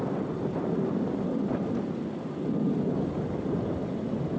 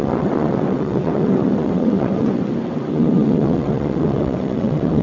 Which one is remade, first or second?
second